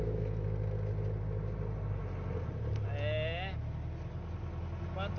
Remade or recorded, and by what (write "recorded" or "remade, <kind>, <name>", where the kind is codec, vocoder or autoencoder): recorded